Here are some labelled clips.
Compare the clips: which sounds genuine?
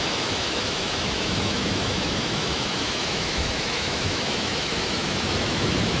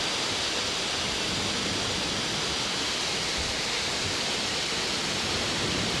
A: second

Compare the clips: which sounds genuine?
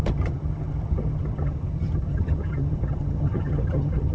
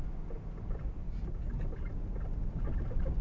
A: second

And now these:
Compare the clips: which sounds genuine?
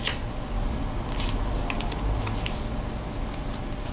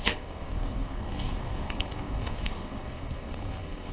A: first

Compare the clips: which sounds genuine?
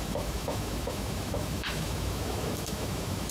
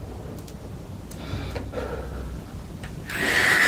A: second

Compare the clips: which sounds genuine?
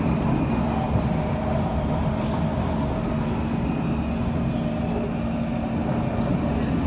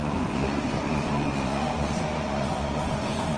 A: first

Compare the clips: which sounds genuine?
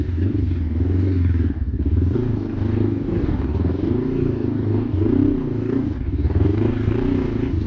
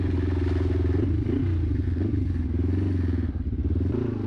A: second